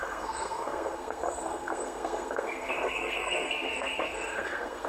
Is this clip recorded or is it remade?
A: remade